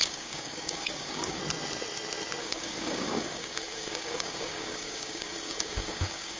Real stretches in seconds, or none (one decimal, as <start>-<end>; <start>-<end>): 1.4-2.4